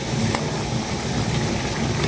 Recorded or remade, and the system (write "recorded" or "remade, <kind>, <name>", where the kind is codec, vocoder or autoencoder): recorded